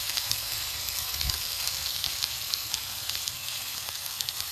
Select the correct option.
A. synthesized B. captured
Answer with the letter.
A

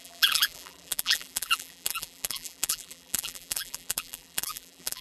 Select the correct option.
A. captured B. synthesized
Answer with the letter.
B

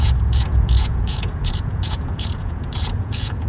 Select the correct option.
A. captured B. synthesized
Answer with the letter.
B